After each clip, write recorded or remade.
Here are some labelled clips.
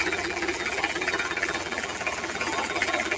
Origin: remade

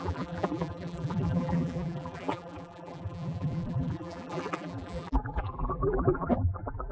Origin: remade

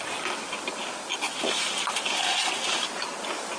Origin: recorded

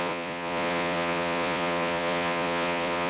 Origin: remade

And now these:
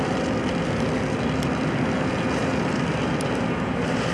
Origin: recorded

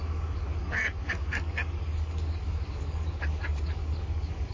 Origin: remade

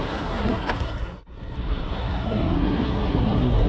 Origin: remade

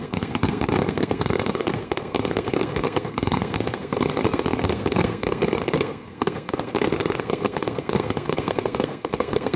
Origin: remade